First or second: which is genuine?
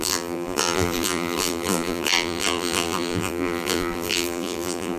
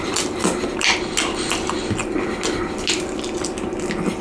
second